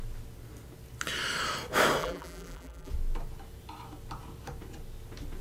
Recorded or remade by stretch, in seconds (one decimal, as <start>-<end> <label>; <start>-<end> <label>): 0.0-2.0 recorded; 2.0-2.9 remade; 2.9-5.4 recorded